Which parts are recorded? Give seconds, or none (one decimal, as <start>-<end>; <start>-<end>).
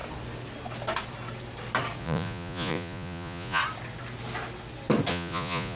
0.0-2.0; 3.6-5.1